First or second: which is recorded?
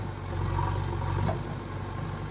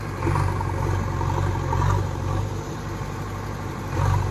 first